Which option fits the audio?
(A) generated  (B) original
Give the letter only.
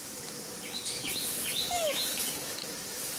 A